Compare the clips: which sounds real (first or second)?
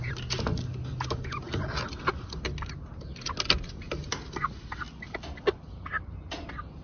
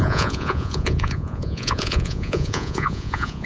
first